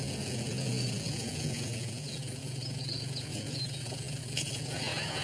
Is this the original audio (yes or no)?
no